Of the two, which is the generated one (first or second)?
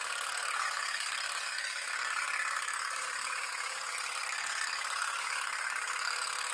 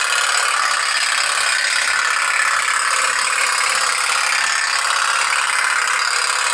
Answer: first